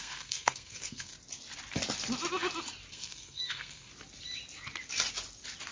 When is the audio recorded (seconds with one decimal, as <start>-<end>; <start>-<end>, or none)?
1.1-2.9; 3.9-5.7

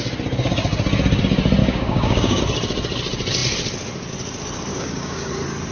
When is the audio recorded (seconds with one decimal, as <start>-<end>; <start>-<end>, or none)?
0.0-1.6; 2.4-4.7; 5.3-5.7

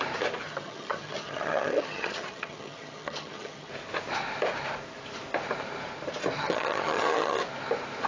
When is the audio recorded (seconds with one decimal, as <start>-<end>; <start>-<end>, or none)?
0.0-0.4; 3.7-6.4; 7.4-8.1

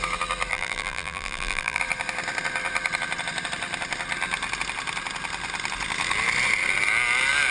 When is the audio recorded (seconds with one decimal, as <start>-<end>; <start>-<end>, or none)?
0.0-0.5; 1.8-7.5

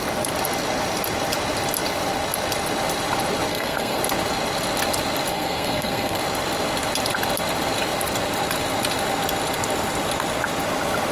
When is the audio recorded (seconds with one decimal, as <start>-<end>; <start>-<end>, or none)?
0.0-3.5; 4.0-5.3; 6.2-11.1

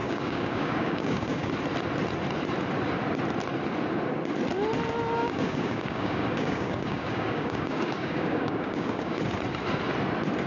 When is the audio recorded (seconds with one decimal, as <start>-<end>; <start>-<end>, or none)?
1.5-5.2; 9.2-10.5

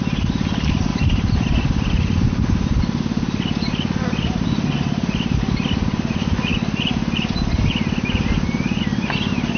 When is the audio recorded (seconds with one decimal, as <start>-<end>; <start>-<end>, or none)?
0.0-9.6

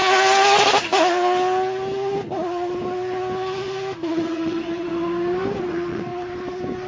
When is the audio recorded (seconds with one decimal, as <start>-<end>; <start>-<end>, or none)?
0.0-4.1; 4.9-5.6; 6.1-6.9